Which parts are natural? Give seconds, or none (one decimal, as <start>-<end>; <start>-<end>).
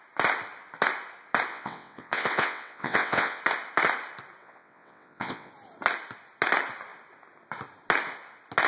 0.0-1.5; 3.4-4.4; 5.5-8.7